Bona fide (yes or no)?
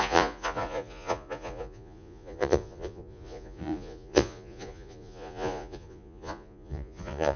no